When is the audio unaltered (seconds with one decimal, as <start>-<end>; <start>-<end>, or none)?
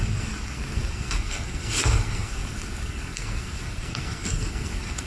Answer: none